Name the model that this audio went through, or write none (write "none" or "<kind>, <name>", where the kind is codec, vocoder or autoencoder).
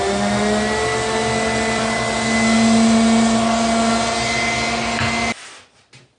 none